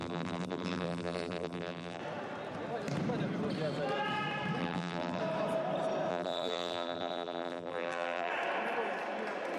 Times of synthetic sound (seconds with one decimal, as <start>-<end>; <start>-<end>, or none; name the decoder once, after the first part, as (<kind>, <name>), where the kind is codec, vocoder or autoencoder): 0.0-2.0 (vocoder, BigVGAN v2); 4.6-5.2; 6.1-8.3